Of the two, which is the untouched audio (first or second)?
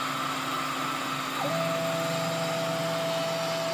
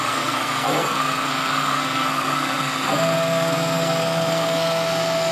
first